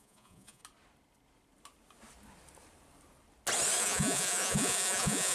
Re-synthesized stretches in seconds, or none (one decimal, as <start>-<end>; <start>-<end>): 0.0-0.6; 3.8-5.3